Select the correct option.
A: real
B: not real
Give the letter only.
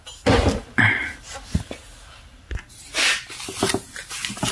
A